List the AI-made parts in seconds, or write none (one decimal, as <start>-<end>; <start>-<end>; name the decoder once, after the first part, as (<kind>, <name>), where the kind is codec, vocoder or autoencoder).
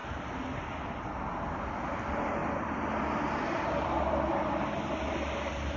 0.0-0.6 (vocoder, BigVGAN v2); 2.4-5.1